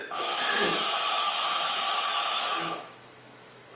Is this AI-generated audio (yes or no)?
yes